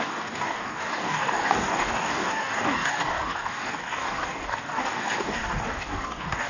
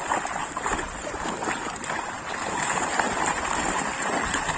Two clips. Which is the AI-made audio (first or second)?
first